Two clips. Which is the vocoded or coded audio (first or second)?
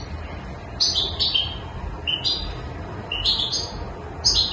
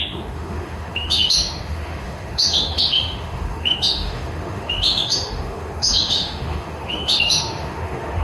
second